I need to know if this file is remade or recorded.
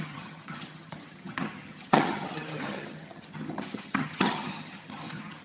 remade